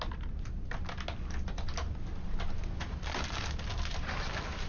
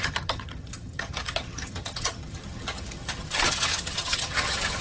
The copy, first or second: second